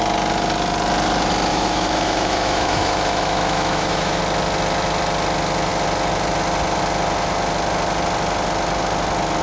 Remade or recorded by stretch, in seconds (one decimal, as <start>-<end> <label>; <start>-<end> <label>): 0.0-1.5 recorded; 1.5-4.2 remade; 4.2-9.4 recorded